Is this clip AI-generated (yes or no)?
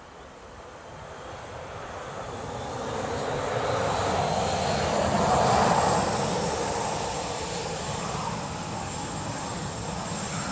no